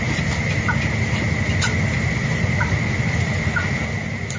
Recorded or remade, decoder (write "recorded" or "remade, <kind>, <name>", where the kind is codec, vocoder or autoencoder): recorded